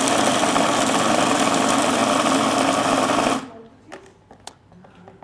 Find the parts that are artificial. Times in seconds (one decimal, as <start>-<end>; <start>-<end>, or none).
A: none